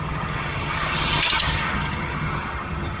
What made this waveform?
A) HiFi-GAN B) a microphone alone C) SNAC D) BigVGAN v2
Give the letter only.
A